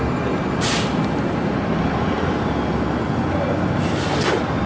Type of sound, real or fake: real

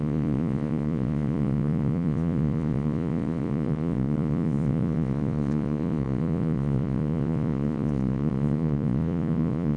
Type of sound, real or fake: fake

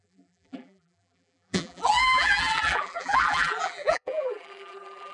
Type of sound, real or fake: fake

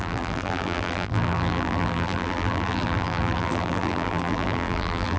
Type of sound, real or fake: fake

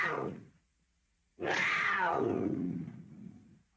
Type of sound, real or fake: fake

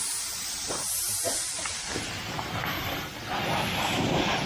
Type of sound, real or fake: real